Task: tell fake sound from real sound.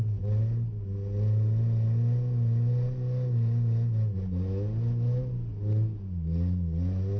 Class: real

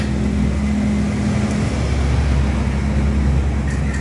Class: real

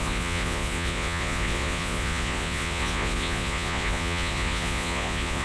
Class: fake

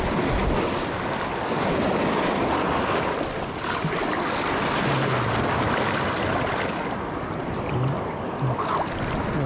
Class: real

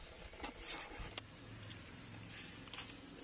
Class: real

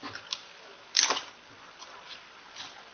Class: real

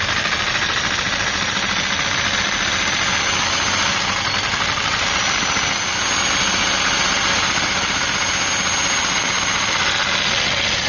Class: real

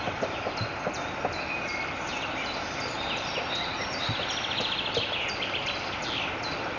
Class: real